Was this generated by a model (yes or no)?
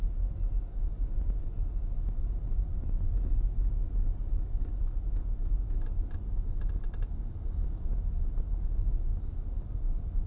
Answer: no